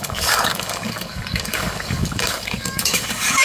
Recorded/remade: remade